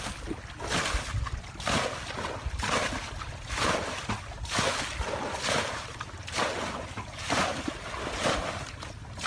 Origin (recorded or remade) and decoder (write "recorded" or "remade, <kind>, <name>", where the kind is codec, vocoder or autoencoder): recorded